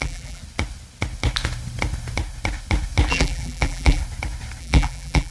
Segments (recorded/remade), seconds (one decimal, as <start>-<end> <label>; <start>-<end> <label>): 0.0-0.4 remade; 0.4-3.1 recorded; 3.1-4.0 remade; 4.0-4.6 recorded; 4.6-5.3 remade